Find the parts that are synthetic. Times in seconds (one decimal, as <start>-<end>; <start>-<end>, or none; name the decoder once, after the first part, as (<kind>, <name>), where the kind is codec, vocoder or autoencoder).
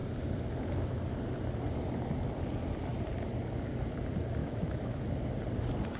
4.4-5.0 (autoencoder, DAC-VAE)